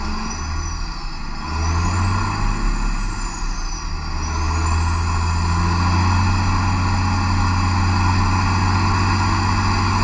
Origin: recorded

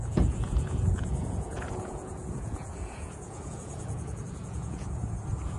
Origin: remade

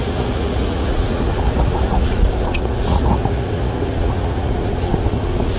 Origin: remade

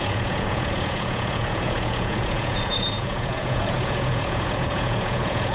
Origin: remade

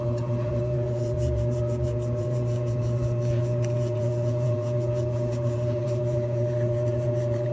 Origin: remade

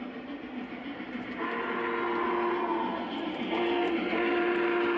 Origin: recorded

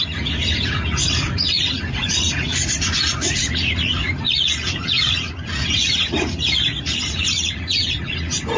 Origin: remade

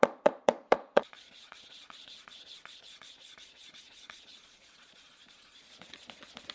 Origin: remade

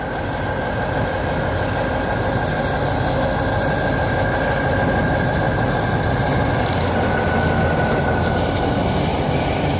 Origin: recorded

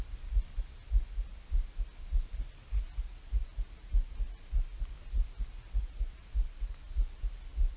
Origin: recorded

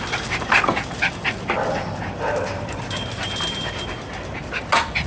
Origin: recorded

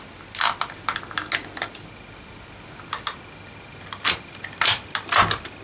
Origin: recorded